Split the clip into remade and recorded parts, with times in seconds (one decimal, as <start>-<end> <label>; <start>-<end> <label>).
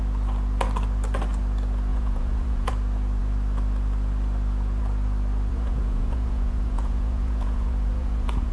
0.0-1.9 recorded; 1.9-2.7 remade; 2.7-5.5 recorded; 5.5-8.5 remade